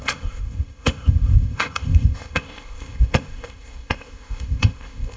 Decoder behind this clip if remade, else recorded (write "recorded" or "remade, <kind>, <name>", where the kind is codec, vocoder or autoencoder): remade, codec, ZipCodec